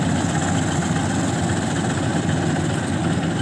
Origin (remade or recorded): recorded